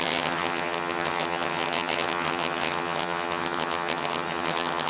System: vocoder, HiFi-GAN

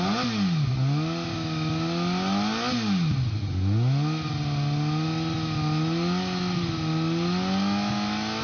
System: none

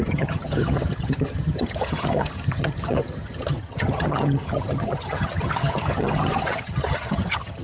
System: vocoder, HiFi-GAN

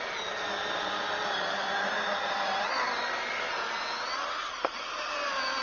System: none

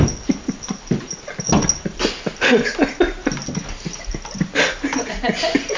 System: none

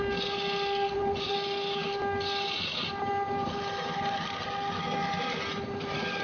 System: none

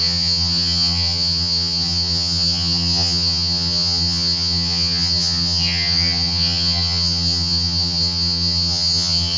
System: vocoder, HiFi-GAN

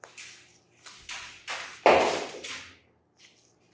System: none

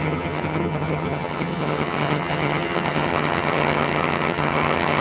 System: vocoder, HiFi-GAN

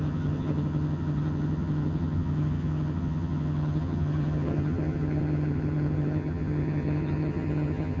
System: vocoder, HiFi-GAN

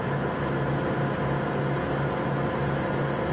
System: none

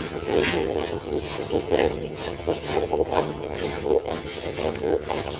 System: vocoder, HiFi-GAN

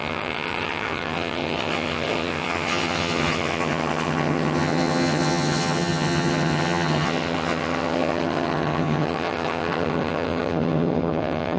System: vocoder, HiFi-GAN